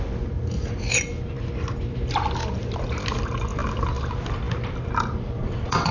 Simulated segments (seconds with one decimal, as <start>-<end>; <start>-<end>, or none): 5.4-5.9